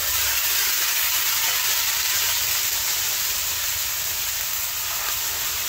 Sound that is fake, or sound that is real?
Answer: real